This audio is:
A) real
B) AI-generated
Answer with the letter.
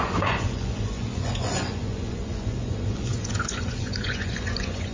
B